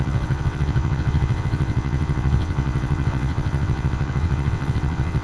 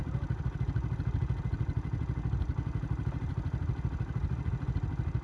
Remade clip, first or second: first